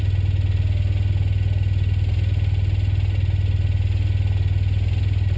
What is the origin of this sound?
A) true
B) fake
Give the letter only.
A